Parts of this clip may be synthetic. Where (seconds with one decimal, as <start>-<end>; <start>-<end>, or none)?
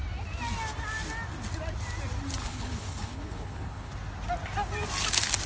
2.4-3.9